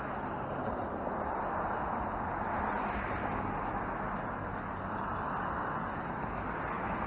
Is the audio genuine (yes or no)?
yes